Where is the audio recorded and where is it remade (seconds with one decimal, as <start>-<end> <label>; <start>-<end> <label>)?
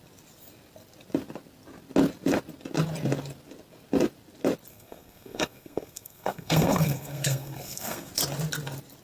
0.0-4.7 recorded; 4.7-8.1 remade; 8.1-9.0 recorded